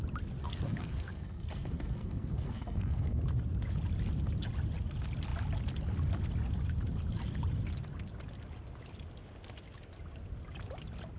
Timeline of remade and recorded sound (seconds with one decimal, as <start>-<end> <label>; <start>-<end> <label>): 0.0-0.4 recorded; 0.4-3.2 remade; 3.2-11.2 recorded